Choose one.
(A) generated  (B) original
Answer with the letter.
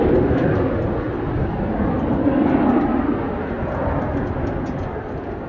B